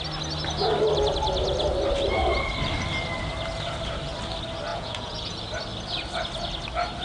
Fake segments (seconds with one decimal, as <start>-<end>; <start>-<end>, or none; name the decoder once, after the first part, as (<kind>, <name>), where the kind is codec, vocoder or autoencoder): 4.7-5.4 (vocoder, Vocos)